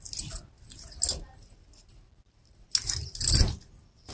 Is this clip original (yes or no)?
yes